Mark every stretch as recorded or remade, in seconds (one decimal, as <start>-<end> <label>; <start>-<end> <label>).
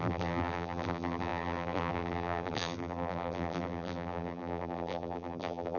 0.0-5.8 remade